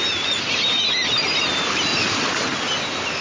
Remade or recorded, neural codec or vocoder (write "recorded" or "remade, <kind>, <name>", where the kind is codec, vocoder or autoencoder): recorded